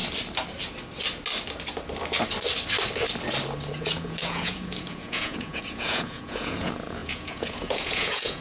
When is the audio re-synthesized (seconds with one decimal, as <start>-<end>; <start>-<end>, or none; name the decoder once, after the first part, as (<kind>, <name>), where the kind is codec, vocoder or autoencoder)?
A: 3.8-8.4 (vocoder, Vocos)